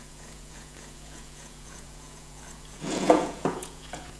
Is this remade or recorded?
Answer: remade